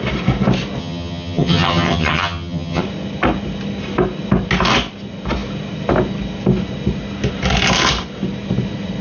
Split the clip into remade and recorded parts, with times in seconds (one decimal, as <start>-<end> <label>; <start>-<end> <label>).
0.0-0.8 recorded; 0.8-2.8 remade; 2.8-9.0 recorded